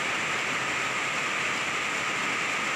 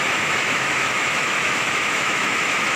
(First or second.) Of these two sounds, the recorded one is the first